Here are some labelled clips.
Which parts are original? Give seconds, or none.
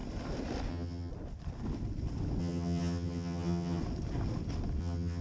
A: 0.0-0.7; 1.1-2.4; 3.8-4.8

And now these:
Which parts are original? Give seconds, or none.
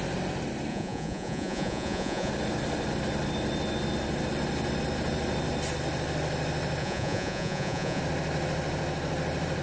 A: 0.0-0.7; 2.3-6.8; 8.0-9.6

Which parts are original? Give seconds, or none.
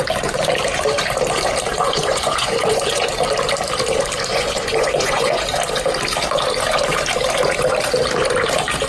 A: 0.0-1.7; 3.1-4.3; 5.4-8.9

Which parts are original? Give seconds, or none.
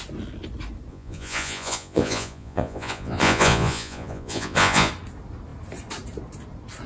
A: 0.0-0.9; 4.9-6.9